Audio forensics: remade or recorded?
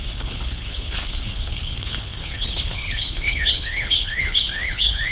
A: remade